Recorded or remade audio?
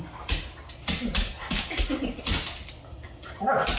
recorded